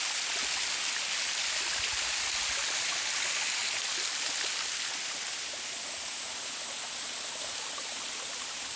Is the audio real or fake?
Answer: real